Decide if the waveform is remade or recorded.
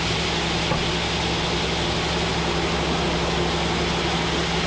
recorded